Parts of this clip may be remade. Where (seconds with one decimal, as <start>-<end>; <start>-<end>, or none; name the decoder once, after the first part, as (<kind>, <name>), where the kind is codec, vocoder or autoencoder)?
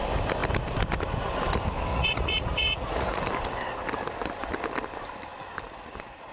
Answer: 1.9-3.2 (vocoder, Vocos)